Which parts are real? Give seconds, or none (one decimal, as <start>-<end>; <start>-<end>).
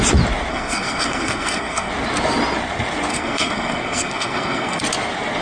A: 0.0-0.5; 1.9-3.1; 4.8-5.4